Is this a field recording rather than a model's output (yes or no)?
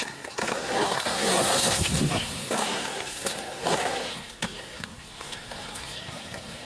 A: no